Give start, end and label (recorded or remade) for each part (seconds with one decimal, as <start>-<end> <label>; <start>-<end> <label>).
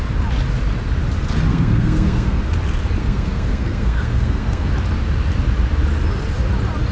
0.0-1.5 recorded; 1.5-2.4 remade; 2.4-3.0 recorded; 3.0-4.7 remade; 4.7-6.9 recorded